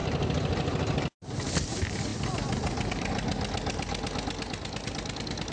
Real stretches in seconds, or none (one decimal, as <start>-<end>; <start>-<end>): 0.0-5.5